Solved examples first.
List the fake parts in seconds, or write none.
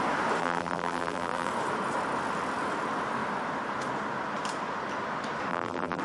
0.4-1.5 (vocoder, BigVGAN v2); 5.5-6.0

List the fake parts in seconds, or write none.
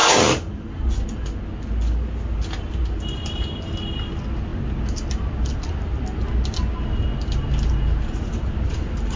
none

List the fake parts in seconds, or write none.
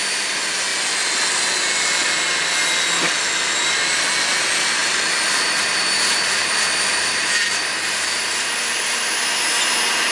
4.8-9.1 (vocoder, BigVGAN v2)